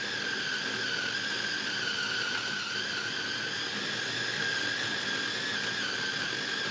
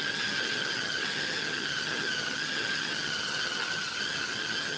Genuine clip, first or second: first